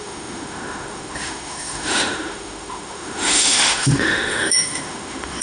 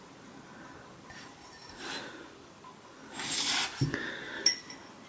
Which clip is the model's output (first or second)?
first